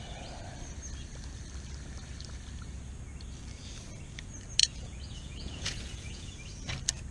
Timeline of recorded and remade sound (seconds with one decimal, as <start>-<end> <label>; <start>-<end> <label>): 0.0-4.6 recorded; 4.6-6.3 remade; 6.3-7.1 recorded